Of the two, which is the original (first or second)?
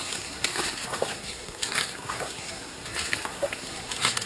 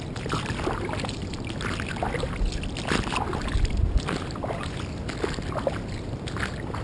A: second